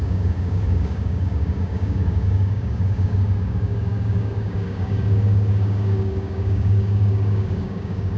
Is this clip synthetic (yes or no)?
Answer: yes